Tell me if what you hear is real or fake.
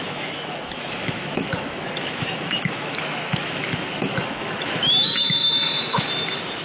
fake